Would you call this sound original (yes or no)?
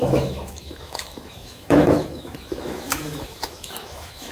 no